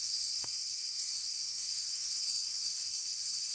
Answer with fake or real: fake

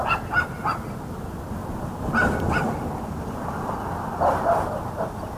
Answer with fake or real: real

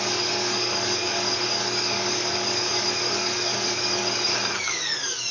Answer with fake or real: fake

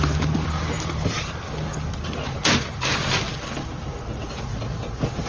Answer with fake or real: real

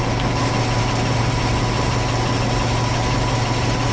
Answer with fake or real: real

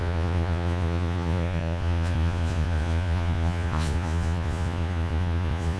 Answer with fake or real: fake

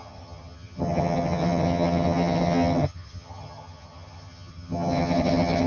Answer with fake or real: fake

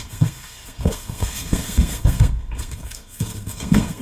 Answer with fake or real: fake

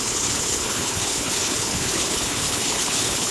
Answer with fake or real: fake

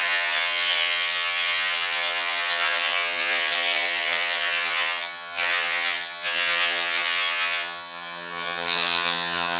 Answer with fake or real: fake